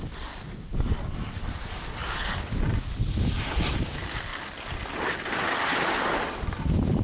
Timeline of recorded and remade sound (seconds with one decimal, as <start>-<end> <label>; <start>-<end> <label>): 0.0-0.9 recorded; 0.9-4.3 remade; 4.3-6.6 recorded; 6.6-7.0 remade